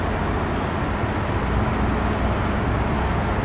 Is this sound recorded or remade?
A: recorded